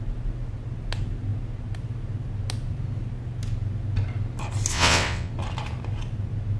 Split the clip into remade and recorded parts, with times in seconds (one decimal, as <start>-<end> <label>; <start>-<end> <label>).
0.0-4.7 recorded; 4.7-5.3 remade; 5.3-6.6 recorded